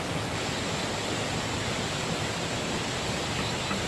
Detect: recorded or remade recorded